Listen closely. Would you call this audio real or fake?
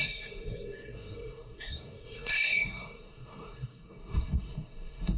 fake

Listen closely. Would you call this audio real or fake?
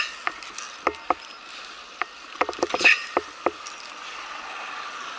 real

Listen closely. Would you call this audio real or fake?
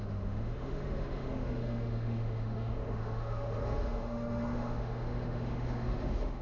fake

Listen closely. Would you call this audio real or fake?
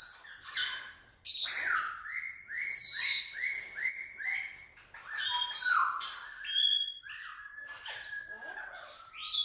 real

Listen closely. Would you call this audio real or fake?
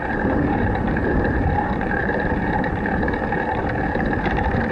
fake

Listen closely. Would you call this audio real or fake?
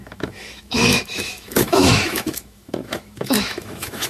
fake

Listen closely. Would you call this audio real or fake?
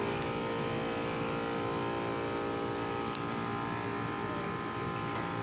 real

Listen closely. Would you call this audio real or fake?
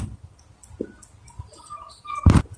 real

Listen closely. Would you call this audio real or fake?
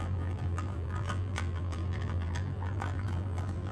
fake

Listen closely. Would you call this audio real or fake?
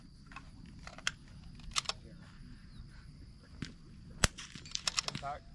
real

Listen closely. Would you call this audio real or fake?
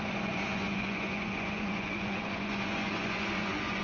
fake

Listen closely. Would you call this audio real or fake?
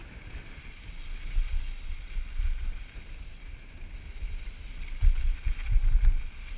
real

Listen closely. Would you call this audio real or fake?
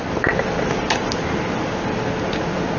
real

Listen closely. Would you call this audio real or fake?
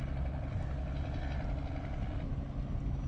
real